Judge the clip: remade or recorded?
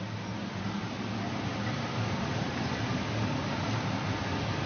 recorded